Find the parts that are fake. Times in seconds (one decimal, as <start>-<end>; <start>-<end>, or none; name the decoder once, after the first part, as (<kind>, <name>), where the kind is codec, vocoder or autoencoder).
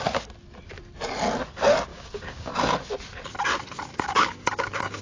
1.9-2.5 (codec, DAC); 3.9-5.0